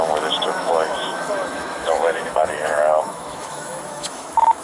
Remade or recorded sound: remade